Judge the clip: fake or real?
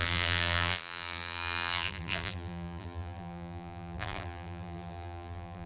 fake